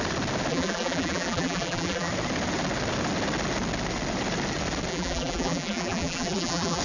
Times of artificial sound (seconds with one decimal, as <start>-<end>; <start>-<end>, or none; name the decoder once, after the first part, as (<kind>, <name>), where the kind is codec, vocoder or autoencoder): 0.5-2.1 (vocoder, BigVGAN v2); 4.9-6.8